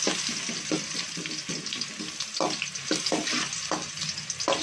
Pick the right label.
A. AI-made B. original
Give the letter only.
B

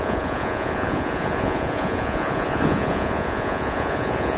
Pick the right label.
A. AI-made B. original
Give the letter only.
A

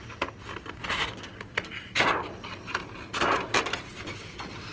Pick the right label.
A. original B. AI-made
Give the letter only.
A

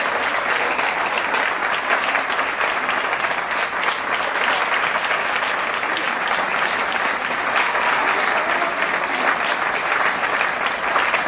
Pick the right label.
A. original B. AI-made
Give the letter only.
A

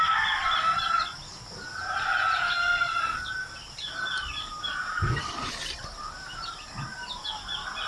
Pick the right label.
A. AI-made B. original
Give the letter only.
B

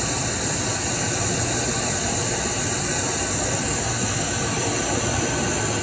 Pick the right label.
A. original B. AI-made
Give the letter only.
A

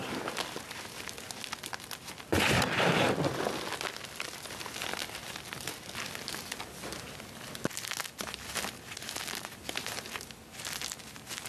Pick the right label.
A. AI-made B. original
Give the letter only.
B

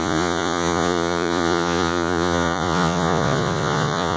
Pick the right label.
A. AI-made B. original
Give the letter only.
A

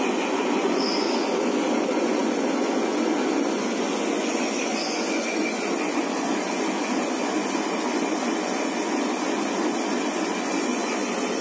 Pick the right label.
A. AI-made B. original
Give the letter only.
A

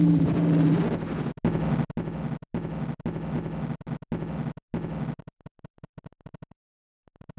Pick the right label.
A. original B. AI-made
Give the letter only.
A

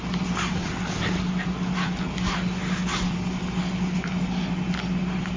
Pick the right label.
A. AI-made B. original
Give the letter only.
B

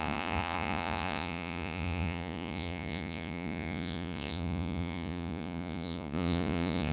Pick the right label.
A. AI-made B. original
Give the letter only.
A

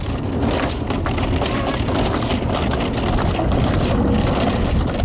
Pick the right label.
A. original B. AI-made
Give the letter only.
A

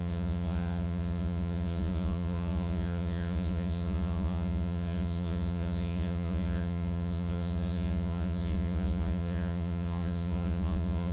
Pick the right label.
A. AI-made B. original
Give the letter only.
A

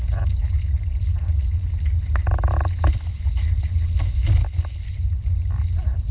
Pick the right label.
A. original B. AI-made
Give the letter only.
A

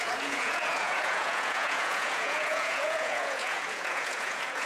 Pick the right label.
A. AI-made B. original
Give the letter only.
A